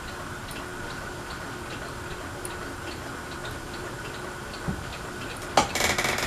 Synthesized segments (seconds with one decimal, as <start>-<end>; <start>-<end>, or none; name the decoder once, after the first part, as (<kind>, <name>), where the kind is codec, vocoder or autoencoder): 3.4-5.3 (vocoder, BigVGAN v2)